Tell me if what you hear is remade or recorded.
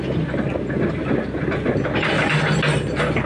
recorded